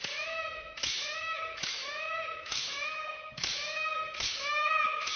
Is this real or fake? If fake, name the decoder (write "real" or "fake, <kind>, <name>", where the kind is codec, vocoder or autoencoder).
fake, autoencoder, DAC-VAE